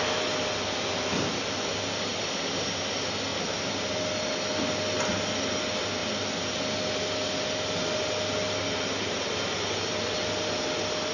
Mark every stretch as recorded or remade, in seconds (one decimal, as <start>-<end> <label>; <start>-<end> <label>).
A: 0.0-11.1 recorded

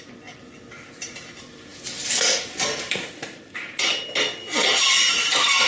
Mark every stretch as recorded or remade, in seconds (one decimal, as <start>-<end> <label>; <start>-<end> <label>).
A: 0.0-5.7 recorded

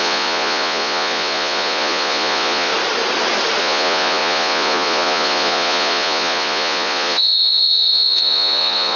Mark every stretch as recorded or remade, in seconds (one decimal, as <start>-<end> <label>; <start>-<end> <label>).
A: 0.0-2.7 remade; 2.7-3.6 recorded; 3.6-9.0 remade